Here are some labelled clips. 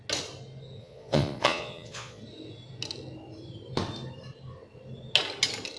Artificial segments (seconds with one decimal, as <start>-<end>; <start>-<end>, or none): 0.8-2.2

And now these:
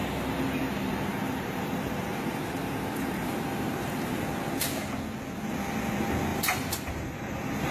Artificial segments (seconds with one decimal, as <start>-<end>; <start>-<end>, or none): 0.0-4.2; 6.3-7.7

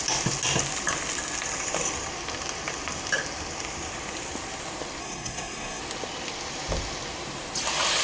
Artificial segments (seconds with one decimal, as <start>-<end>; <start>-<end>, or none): 5.0-5.8

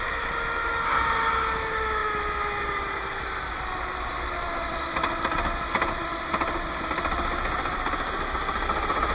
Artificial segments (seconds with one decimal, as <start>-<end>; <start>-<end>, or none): none

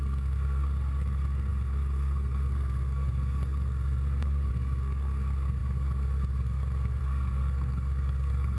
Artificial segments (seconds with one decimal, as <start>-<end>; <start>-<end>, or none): 0.0-8.6

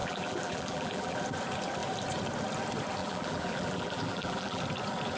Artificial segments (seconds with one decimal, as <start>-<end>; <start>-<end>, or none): 0.0-1.2; 3.0-4.6